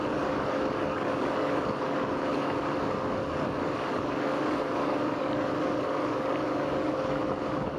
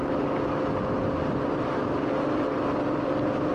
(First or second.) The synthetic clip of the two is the first